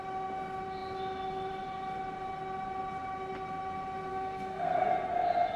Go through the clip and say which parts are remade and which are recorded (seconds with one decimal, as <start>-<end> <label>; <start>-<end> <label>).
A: 0.0-4.1 recorded; 4.1-4.9 remade; 4.9-5.6 recorded